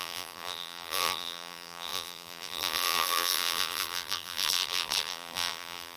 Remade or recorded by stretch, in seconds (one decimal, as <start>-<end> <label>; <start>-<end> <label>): 0.0-6.0 remade